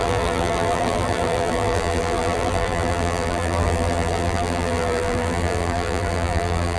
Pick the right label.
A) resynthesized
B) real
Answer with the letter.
A